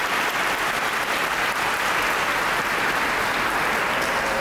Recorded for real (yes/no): yes